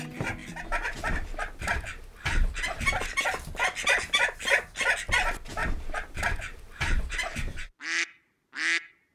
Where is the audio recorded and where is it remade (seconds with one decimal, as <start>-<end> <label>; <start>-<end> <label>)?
0.0-5.6 recorded; 5.6-7.8 remade; 7.8-9.1 recorded